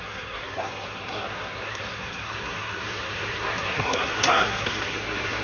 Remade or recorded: remade